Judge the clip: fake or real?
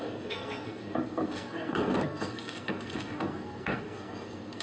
fake